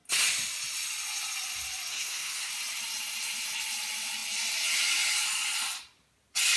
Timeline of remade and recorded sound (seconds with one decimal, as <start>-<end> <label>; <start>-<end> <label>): 0.0-1.9 recorded; 1.9-2.5 remade; 2.5-6.6 recorded